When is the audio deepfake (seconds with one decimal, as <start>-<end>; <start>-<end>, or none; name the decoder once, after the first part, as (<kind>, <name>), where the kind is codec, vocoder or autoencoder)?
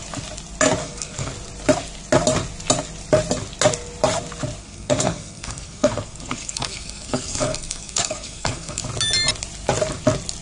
0.8-1.3 (codec, SNAC); 4.6-8.8